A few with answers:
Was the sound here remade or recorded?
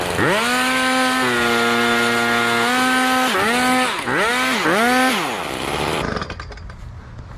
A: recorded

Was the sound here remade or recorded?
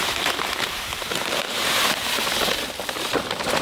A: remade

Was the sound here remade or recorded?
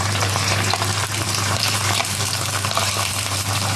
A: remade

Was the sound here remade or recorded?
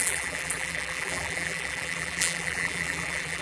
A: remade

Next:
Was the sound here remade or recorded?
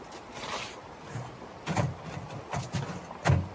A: recorded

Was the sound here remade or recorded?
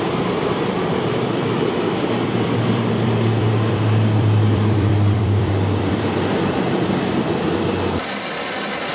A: remade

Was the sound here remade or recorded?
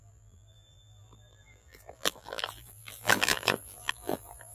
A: remade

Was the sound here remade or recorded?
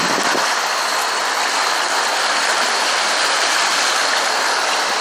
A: recorded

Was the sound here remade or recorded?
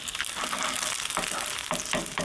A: recorded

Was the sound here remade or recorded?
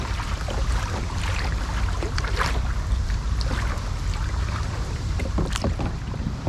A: remade